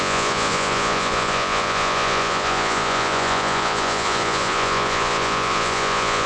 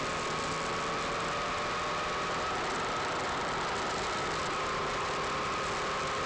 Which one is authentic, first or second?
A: second